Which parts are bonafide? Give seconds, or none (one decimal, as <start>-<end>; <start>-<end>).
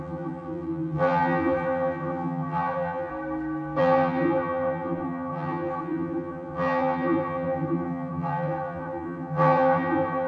3.1-3.8